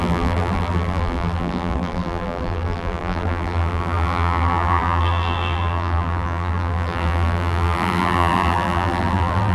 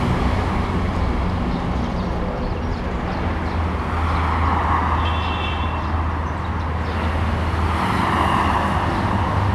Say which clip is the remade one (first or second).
first